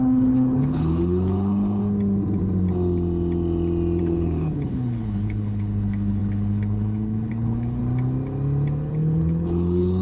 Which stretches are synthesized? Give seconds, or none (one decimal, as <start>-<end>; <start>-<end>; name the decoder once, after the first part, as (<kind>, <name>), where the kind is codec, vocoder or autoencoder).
0.0-1.8 (codec, HILCodec); 4.0-7.8; 8.9-10.0